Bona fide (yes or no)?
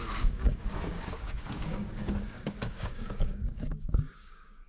no